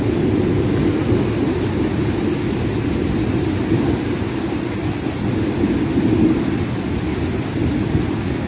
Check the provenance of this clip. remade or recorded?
recorded